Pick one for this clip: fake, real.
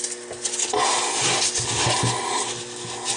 real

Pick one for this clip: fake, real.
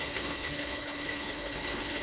fake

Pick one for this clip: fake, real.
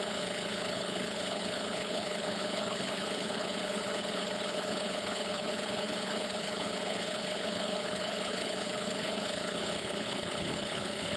fake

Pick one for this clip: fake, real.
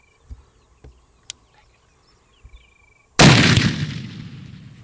real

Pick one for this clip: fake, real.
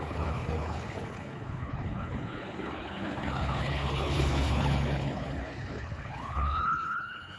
fake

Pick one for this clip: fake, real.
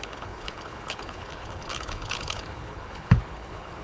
fake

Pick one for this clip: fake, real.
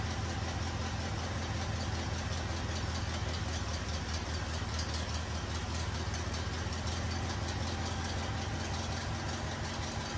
real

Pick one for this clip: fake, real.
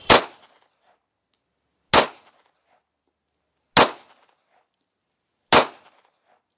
real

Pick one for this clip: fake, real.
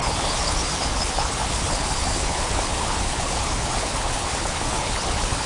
fake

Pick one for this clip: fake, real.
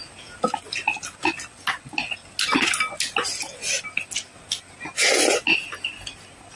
real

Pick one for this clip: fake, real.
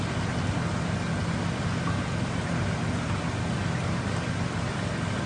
real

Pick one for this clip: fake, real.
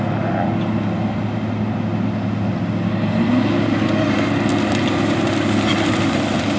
real